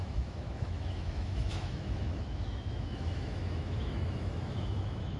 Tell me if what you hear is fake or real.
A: fake